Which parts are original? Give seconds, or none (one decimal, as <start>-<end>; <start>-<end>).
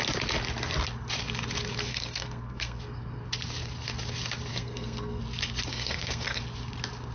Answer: 0.0-1.9; 2.8-4.5; 5.2-5.7; 6.4-7.1